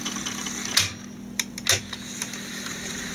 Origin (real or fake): real